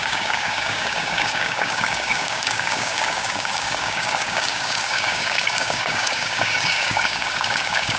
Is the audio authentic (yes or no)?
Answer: no